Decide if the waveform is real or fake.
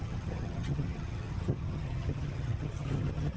fake